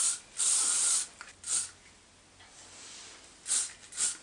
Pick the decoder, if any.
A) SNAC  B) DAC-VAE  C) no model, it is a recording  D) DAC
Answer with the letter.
C